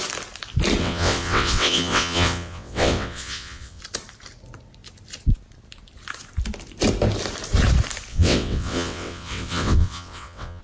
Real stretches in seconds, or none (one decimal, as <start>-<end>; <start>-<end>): 0.0-0.8; 3.8-8.1